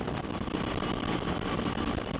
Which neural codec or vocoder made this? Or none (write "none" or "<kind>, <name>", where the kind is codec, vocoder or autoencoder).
none